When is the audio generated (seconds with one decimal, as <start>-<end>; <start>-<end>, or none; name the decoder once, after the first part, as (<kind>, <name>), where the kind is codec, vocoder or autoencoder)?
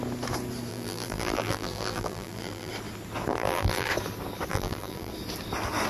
0.7-2.7 (vocoder, BigVGAN v2); 3.3-3.9; 4.5-5.1